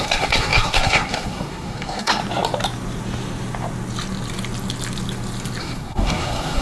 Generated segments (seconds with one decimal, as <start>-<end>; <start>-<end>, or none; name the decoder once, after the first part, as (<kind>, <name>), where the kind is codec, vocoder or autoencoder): 0.0-2.2 (codec, SNAC); 5.6-6.6